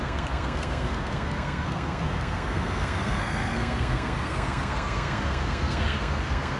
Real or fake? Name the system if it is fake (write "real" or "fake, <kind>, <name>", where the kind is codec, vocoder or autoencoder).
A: fake, codec, SNAC